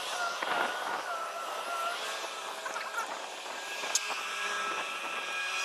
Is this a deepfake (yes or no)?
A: no